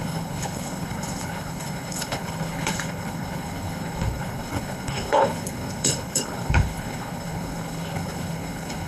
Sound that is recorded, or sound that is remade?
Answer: remade